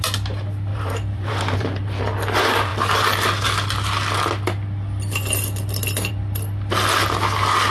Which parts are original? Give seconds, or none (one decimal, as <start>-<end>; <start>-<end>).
0.0-0.7; 2.0-7.7